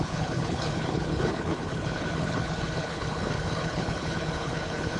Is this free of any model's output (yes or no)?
no